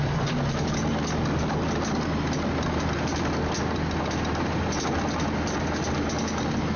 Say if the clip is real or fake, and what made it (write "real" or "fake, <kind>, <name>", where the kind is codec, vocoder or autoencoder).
real